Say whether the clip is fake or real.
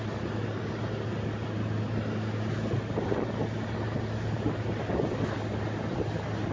real